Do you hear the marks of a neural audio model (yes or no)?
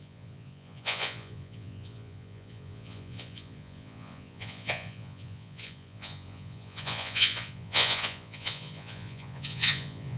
yes